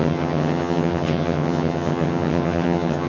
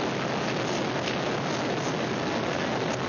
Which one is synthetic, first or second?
first